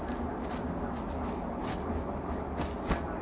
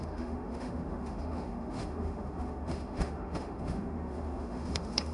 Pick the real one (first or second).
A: first